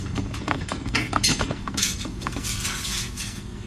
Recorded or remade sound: remade